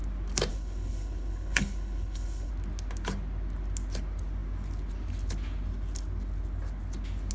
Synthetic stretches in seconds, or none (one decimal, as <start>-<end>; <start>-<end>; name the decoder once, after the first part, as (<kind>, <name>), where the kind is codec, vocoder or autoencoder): 0.5-2.5 (codec, HILCodec)